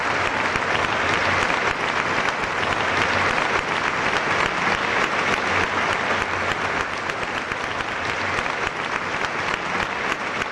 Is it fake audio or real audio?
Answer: real